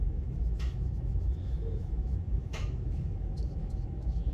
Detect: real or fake fake